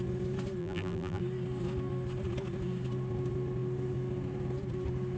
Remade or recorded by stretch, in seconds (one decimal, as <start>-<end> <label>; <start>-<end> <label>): 0.0-0.6 recorded; 0.6-1.2 remade; 1.2-5.2 recorded

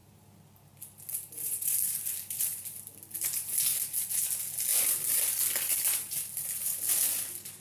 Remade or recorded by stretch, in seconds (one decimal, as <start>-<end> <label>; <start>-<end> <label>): 0.0-3.6 remade; 3.6-4.7 recorded; 4.7-7.6 remade

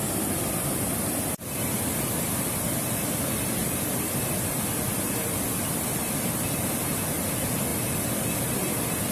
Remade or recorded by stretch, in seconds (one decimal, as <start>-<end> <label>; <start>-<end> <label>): 0.0-9.1 recorded

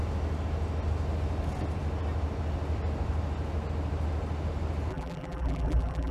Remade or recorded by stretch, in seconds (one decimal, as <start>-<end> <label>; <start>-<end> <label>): 0.0-4.9 recorded; 4.9-6.1 remade